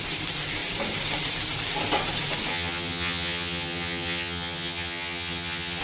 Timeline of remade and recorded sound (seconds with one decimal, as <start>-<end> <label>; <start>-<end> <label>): 0.0-2.5 recorded; 2.5-5.8 remade